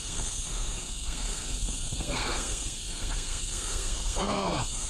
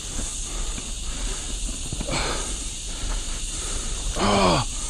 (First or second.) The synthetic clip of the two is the first